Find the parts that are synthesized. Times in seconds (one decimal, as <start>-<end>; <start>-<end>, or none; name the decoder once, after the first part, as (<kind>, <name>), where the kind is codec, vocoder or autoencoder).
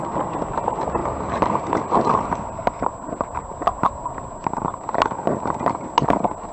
none